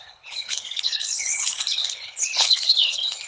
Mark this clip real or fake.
fake